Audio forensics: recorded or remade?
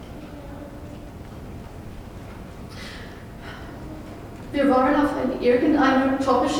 recorded